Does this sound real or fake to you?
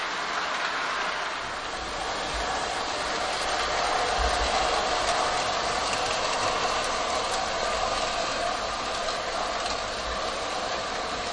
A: real